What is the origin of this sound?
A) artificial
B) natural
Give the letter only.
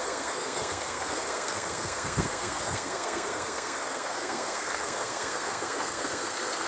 A